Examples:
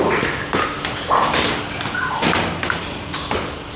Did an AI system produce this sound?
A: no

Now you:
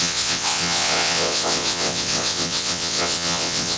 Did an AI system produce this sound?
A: yes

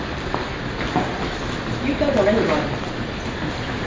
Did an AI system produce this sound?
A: no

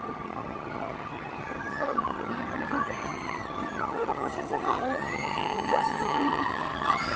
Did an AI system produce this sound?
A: yes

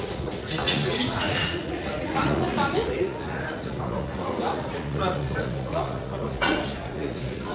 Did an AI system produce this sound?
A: yes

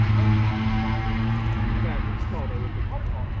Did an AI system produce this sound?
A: no